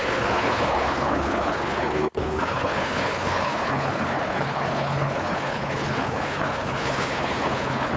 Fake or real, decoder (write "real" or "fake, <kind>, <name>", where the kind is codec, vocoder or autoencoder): fake, codec, HILCodec